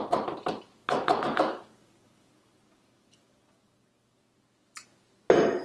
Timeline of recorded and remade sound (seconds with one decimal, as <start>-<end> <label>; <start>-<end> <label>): 0.0-0.8 recorded; 0.8-4.2 remade; 4.2-5.6 recorded